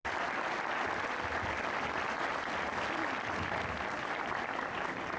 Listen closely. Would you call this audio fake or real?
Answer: real